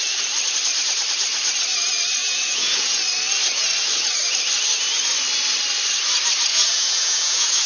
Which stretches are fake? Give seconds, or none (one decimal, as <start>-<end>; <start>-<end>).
2.2-3.0; 6.5-7.7